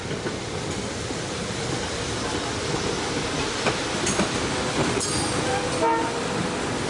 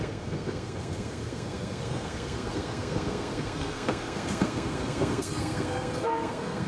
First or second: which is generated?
second